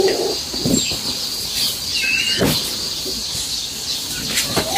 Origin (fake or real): real